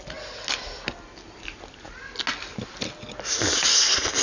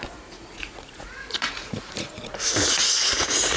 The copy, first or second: second